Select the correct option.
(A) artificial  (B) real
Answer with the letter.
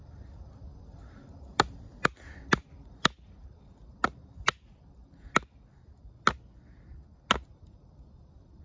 B